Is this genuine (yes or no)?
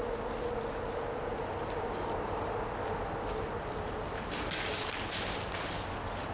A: yes